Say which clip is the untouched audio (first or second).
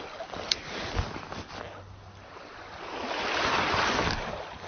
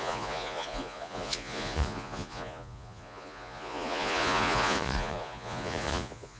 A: first